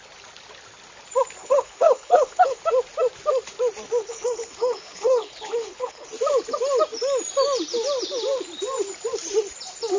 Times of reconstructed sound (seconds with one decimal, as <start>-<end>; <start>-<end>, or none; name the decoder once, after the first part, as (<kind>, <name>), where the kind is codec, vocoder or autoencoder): 1.4-2.6 (codec, HILCodec); 4.0-6.1